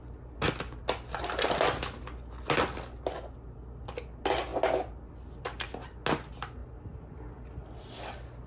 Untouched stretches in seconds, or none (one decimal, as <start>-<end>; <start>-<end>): 0.0-8.5

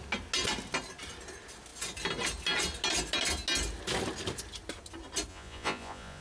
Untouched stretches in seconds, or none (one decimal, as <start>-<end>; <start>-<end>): 0.0-5.3

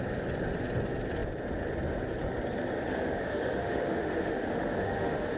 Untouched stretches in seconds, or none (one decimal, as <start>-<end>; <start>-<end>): 0.0-2.9

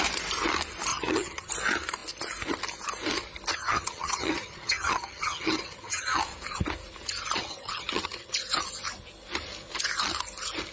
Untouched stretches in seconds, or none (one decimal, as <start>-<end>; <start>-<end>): 0.0-0.9; 1.5-3.5; 6.2-7.4; 8.3-10.7

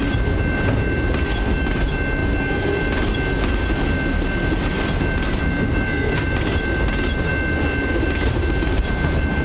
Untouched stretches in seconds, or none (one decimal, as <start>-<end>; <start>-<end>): 0.0-9.4

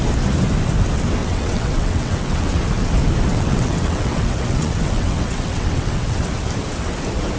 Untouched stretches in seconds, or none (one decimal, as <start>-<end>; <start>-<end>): 0.0-1.2; 2.6-3.3; 6.3-7.4